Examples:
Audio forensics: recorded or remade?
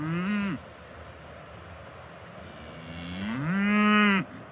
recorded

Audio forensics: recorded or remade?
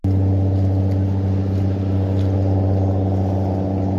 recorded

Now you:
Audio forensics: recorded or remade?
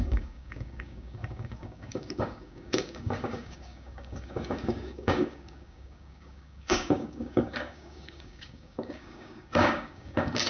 remade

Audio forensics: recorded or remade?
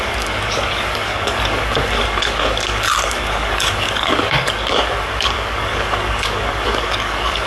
remade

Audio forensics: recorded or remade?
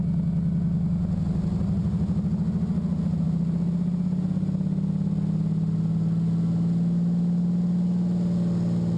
recorded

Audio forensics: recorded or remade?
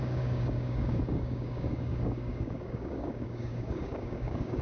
remade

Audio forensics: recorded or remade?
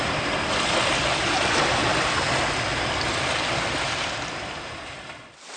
recorded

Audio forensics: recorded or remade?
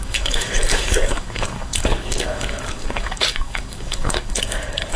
remade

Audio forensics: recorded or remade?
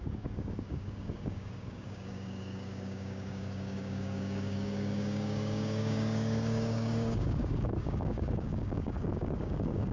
remade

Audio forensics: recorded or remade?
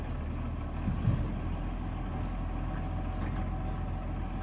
recorded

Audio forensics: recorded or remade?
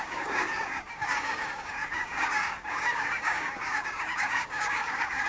remade